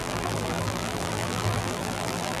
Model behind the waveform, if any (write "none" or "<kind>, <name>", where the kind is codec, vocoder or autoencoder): vocoder, BigVGAN v2